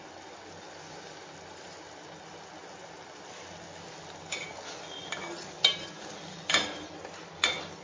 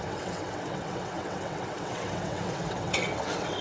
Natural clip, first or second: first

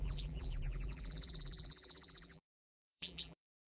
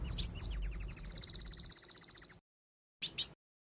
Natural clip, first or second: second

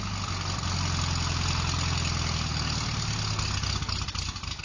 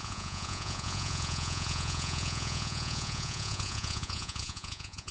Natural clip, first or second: first